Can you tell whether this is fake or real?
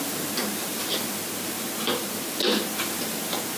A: real